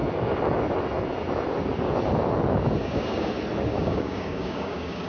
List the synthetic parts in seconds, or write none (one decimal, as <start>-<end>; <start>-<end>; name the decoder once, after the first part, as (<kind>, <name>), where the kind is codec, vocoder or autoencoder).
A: 2.8-3.3 (codec, DAC); 3.7-5.1